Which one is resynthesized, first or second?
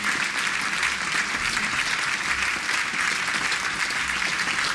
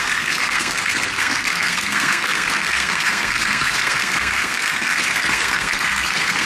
second